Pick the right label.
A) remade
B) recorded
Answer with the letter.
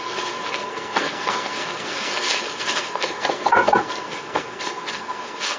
A